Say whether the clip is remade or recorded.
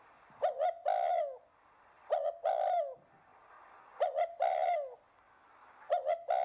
recorded